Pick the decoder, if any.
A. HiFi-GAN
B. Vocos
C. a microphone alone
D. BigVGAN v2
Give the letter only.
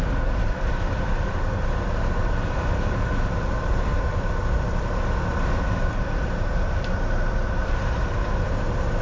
D